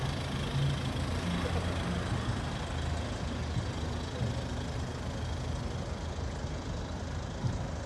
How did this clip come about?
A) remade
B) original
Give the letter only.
B